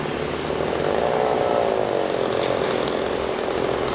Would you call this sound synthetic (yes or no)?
no